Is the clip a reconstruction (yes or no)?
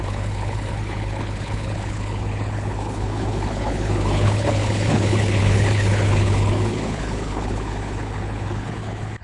yes